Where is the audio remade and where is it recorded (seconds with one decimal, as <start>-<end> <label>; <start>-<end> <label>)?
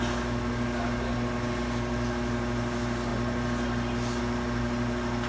0.0-5.3 recorded